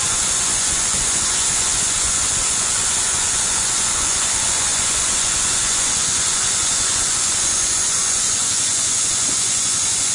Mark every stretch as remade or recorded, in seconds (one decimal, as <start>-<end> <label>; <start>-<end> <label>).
0.0-10.1 remade